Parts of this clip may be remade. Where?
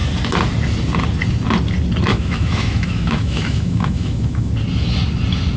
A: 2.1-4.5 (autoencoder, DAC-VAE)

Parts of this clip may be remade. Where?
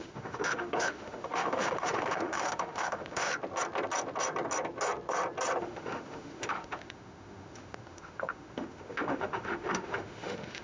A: 0.0-3.3 (autoencoder, DAC-VAE); 5.6-10.6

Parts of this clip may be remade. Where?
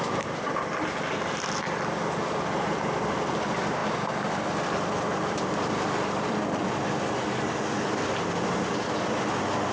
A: none